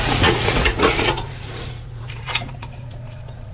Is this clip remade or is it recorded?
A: remade